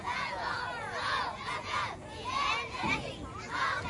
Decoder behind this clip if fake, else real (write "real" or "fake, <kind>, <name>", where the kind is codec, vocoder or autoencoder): fake, vocoder, Vocos